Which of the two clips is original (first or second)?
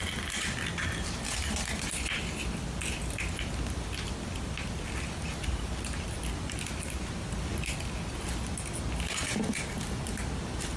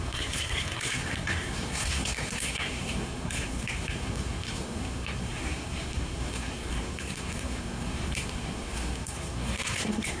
first